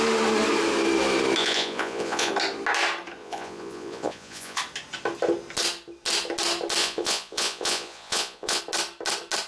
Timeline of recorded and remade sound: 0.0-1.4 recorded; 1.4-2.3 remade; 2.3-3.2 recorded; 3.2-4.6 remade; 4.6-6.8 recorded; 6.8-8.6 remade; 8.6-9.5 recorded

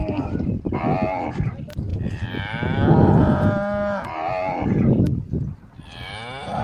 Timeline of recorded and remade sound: 0.0-0.8 remade; 0.8-6.6 recorded

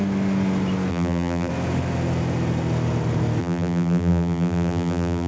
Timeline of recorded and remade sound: 0.0-0.9 recorded; 0.9-1.5 remade; 1.5-3.4 recorded; 3.4-5.3 remade

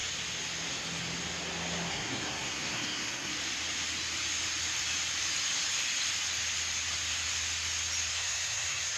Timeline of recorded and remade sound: 0.0-1.9 recorded; 1.9-3.3 remade; 3.3-8.1 recorded; 8.1-9.0 remade